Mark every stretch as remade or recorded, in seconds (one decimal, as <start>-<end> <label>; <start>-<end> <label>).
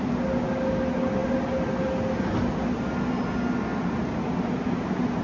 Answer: 0.0-5.2 recorded